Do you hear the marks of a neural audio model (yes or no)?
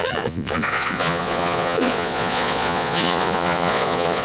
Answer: yes